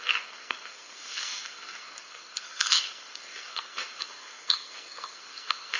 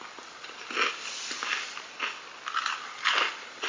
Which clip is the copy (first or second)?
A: first